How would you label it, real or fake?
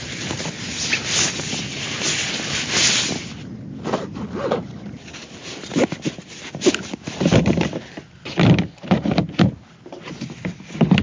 real